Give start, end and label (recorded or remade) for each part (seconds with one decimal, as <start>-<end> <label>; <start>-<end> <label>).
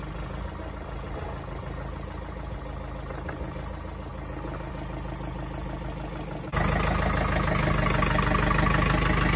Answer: 0.0-9.4 recorded